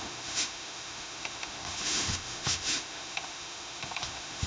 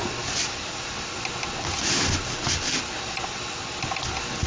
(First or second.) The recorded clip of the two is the second